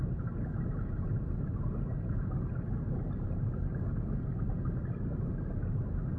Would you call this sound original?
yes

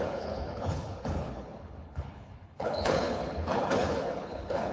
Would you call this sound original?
no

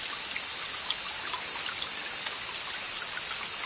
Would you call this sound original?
yes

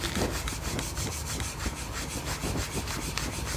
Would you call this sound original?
yes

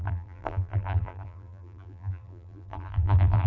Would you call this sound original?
no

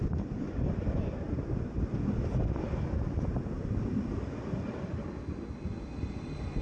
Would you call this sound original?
yes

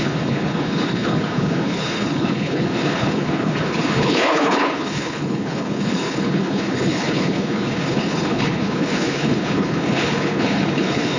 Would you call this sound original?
no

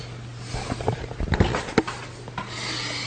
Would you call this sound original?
yes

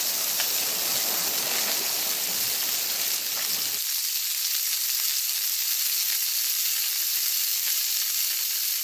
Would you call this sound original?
yes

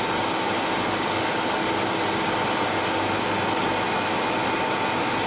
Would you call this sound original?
yes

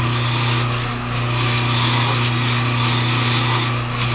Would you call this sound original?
yes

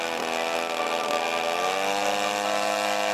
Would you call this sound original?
yes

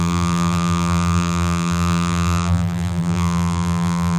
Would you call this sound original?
no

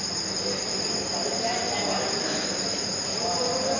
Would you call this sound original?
yes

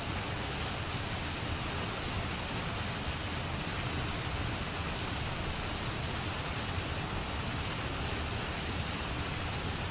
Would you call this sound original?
yes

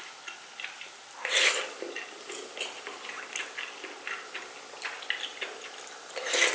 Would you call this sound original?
yes